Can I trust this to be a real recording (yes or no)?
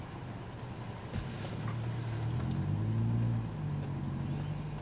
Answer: yes